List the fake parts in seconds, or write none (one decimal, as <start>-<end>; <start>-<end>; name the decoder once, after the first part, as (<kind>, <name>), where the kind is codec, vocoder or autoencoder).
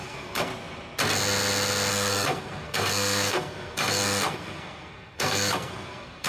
0.0-0.5 (codec, SNAC); 1.9-6.3